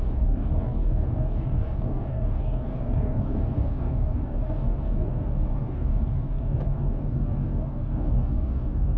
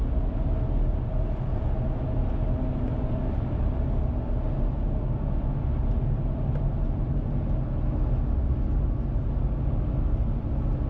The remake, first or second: first